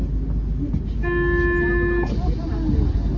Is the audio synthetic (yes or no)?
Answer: no